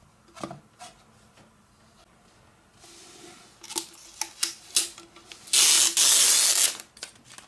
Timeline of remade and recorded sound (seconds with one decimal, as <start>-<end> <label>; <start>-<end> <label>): 0.0-7.5 recorded